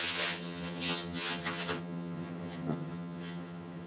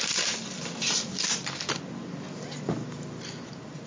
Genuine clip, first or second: second